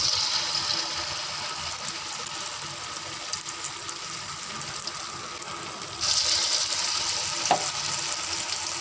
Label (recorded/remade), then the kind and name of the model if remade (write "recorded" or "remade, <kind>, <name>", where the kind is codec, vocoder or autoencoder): recorded